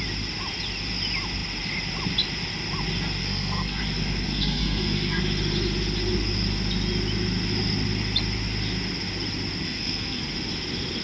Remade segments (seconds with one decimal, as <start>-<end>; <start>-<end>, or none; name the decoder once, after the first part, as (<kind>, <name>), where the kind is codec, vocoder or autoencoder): 3.2-3.8 (codec, SNAC); 4.2-5.2; 9.6-10.2